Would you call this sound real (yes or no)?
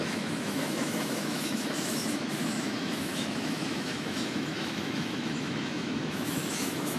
no